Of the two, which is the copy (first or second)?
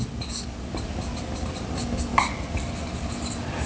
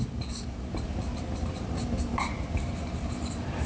second